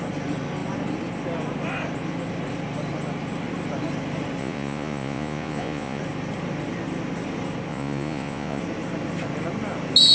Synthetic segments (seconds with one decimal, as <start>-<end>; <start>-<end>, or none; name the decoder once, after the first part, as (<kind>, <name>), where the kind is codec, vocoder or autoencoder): 4.4-6.0 (vocoder, Vocos); 7.7-8.6